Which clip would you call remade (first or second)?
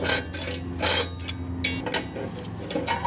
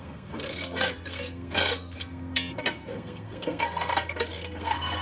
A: second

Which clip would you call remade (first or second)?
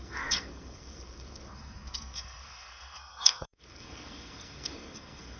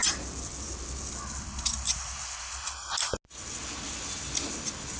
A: first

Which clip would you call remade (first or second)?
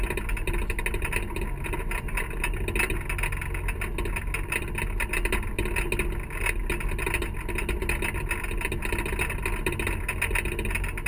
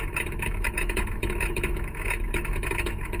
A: second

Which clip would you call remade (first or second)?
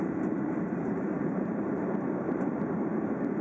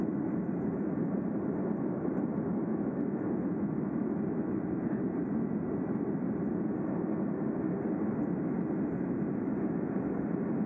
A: first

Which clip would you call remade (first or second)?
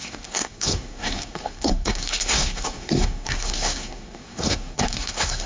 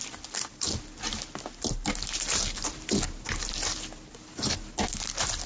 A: first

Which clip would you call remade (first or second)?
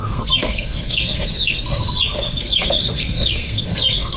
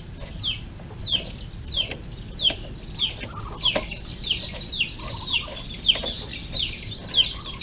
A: first